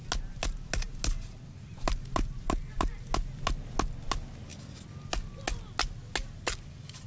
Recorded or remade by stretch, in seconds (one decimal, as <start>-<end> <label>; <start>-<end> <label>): 0.0-7.1 recorded